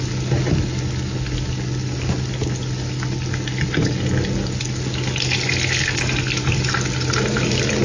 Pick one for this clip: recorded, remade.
recorded